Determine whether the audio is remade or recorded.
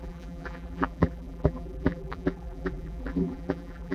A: remade